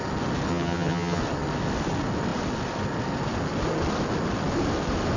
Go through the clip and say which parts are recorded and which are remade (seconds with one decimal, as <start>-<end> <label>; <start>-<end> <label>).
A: 0.0-0.5 recorded; 0.5-1.2 remade; 1.2-5.2 recorded